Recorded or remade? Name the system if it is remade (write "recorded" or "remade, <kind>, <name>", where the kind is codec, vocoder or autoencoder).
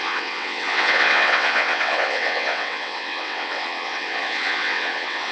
remade, vocoder, WaveNeXt